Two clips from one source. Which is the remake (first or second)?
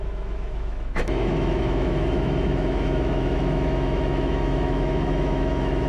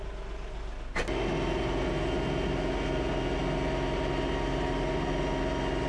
first